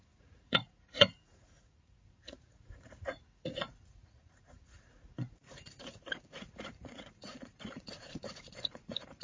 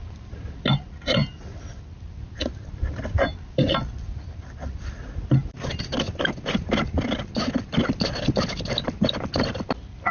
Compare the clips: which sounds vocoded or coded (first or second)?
first